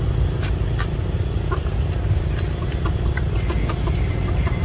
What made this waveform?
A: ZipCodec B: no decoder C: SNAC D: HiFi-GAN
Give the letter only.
B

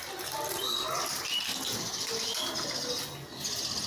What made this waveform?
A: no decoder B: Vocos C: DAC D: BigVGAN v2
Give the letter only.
A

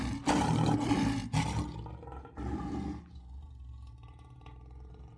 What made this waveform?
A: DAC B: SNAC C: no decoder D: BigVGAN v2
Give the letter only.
C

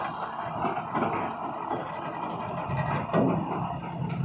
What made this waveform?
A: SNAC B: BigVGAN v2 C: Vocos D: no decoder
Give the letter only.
D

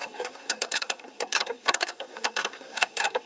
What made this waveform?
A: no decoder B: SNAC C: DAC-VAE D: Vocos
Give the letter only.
B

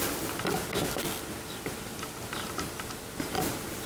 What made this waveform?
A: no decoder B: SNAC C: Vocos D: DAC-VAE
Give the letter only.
A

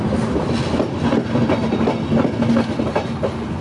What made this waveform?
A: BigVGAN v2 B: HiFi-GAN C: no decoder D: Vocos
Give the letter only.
C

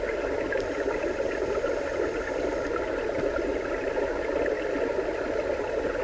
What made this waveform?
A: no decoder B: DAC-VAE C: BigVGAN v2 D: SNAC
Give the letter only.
A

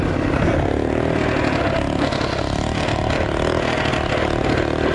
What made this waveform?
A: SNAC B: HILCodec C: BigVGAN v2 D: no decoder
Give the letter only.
D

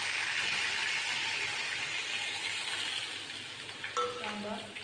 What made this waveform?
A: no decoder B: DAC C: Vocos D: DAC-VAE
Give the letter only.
A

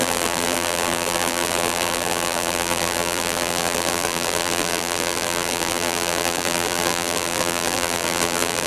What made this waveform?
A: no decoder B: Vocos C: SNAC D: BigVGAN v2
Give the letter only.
D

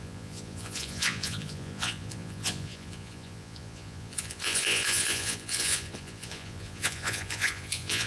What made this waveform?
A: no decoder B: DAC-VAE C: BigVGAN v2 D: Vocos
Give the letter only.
D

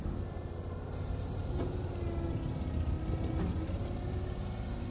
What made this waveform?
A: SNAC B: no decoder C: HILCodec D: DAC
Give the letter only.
B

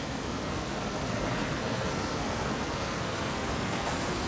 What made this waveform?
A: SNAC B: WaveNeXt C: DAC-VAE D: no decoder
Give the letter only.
A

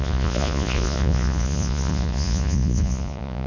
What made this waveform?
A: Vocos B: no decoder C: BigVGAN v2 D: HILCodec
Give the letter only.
A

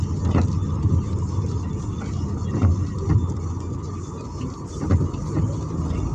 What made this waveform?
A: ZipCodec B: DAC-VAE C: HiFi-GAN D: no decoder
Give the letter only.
D